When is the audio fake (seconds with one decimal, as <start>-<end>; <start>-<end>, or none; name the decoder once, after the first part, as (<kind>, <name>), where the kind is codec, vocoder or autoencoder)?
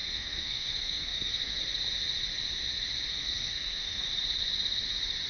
0.0-1.6 (codec, SNAC); 3.1-4.0